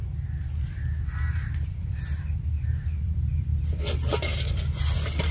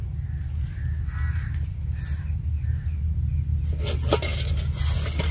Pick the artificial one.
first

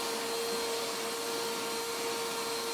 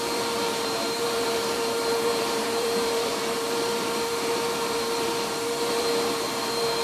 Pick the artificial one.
second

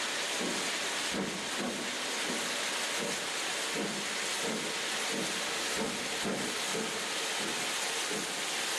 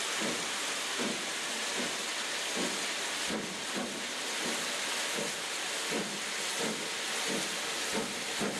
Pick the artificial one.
second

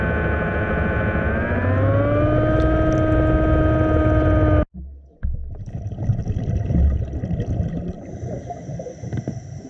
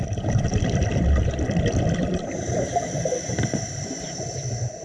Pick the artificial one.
second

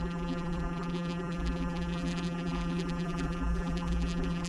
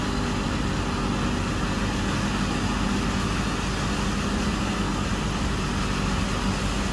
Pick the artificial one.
first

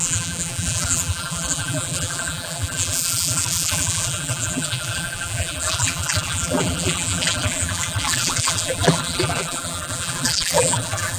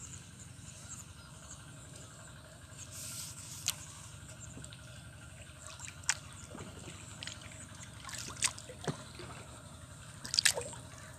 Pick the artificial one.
first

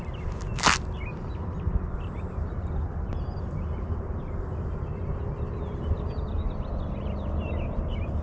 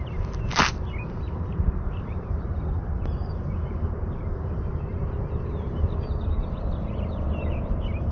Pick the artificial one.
second